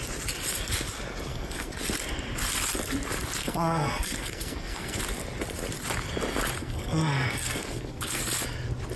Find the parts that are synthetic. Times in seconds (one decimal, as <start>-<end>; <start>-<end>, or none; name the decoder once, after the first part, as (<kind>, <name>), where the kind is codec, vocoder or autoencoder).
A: 1.3-1.8 (codec, SNAC); 3.4-5.0; 6.6-8.2

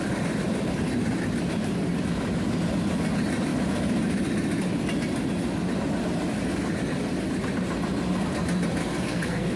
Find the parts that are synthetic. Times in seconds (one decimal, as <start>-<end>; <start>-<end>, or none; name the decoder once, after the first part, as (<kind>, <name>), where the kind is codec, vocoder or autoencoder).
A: 8.8-9.6 (codec, SNAC)

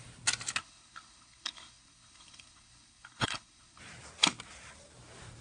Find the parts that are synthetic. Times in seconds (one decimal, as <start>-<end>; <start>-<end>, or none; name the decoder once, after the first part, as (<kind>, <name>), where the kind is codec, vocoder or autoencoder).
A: 0.6-3.8 (codec, HILCodec)

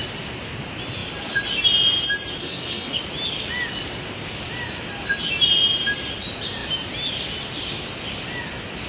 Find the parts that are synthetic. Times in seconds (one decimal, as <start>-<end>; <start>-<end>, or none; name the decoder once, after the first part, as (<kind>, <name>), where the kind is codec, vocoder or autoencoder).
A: 2.4-3.0 (codec, SNAC)

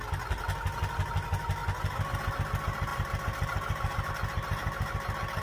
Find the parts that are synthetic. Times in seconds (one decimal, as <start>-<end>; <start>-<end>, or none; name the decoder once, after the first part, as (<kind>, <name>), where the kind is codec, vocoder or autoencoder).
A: 2.9-4.1 (vocoder, BigVGAN v2)

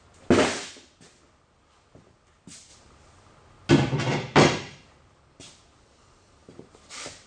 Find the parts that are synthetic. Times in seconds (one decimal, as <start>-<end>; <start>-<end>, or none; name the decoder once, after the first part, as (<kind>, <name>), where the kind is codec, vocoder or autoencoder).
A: none

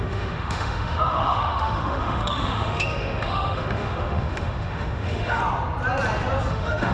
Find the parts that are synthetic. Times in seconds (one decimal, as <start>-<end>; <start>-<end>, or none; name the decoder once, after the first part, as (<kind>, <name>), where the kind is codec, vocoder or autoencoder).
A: 0.0-5.4 (autoencoder, DAC-VAE); 6.5-6.9

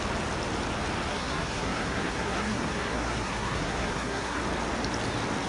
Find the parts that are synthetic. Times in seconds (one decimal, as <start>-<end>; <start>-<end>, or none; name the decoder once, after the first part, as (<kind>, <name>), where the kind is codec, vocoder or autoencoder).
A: 1.1-4.4 (codec, SNAC)